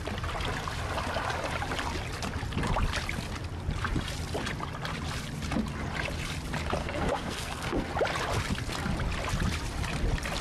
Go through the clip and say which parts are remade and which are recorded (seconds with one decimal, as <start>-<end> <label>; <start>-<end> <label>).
0.0-6.8 recorded; 6.8-7.9 remade; 7.9-10.4 recorded